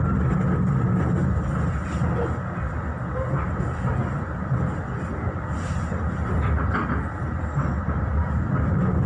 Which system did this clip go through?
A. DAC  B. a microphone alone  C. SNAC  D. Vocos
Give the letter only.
B